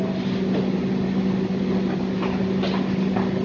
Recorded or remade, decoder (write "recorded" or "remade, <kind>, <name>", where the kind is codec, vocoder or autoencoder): recorded